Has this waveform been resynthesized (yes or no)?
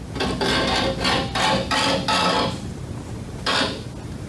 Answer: no